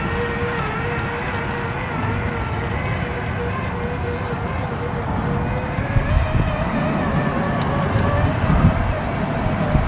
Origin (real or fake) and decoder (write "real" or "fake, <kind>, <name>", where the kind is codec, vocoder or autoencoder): real